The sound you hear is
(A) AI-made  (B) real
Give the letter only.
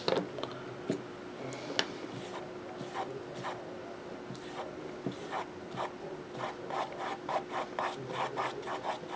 B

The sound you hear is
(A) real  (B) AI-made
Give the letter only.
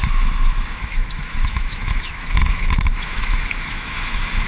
B